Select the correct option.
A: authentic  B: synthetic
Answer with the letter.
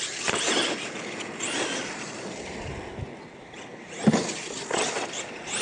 A